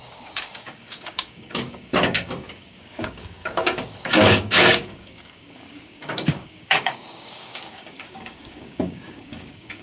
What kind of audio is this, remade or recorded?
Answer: remade